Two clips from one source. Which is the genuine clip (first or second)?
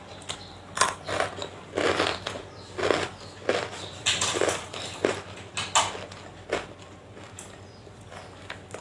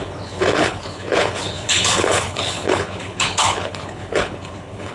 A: first